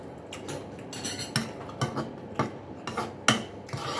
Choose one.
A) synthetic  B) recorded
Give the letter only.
B